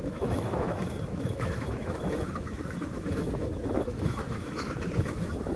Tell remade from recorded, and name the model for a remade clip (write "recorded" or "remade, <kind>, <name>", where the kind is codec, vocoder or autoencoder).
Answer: remade, autoencoder, DAC-VAE